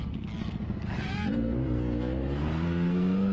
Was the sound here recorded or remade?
remade